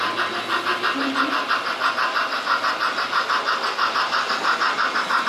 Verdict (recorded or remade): recorded